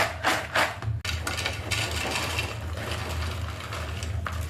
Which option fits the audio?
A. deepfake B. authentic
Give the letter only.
B